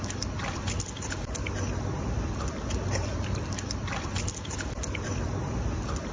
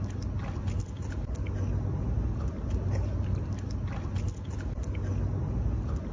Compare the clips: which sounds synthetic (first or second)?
first